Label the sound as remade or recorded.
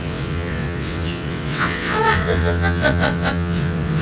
remade